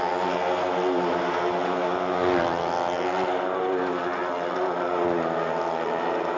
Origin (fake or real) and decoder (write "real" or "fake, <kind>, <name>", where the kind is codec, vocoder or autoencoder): real